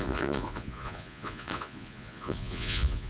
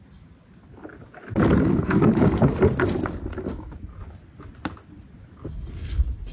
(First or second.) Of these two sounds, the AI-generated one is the first